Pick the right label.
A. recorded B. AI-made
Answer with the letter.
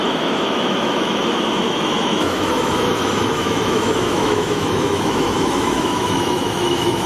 B